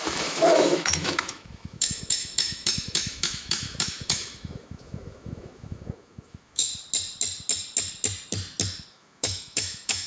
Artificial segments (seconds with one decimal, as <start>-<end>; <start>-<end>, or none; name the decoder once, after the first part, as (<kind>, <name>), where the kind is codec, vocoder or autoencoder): 0.0-6.7 (autoencoder, DAC-VAE); 8.9-10.1